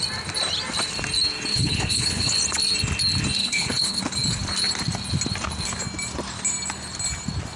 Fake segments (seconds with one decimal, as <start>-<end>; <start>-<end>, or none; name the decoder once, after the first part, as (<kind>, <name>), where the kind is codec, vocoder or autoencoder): 1.5-2.3 (codec, HILCodec); 3.4-4.0